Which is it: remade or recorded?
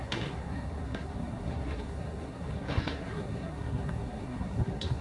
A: remade